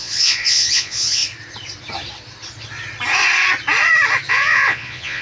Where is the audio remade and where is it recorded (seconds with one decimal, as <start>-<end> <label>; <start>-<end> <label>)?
0.0-1.2 remade; 1.2-4.3 recorded; 4.3-5.2 remade